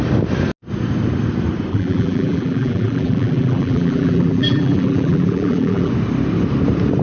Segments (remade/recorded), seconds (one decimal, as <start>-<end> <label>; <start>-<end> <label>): 0.0-1.7 recorded; 1.7-5.9 remade; 5.9-7.0 recorded